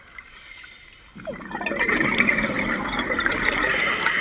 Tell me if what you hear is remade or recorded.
recorded